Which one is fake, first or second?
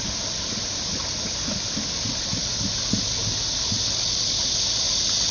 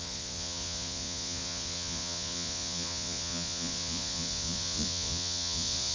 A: second